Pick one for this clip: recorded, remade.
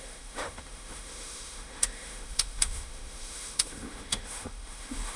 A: remade